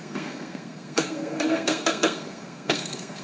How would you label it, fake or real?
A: fake